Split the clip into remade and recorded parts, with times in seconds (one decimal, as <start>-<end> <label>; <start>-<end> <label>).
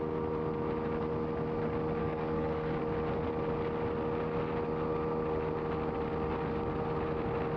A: 0.0-2.0 recorded; 2.0-2.8 remade; 2.8-7.6 recorded